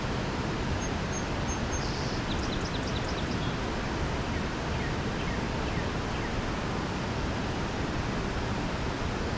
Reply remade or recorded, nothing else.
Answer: recorded